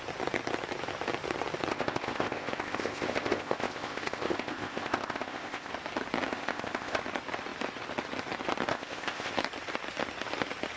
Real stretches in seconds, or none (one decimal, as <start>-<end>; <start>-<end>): 0.0-1.7; 5.7-6.3; 7.0-8.7; 9.3-10.8